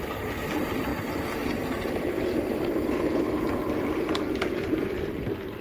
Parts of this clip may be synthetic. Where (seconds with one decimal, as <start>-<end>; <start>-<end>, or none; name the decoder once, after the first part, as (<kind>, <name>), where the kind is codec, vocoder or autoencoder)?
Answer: 0.9-4.3 (vocoder, BigVGAN v2); 4.7-5.6